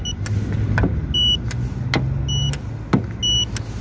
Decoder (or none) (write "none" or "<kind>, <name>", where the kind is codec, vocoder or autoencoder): none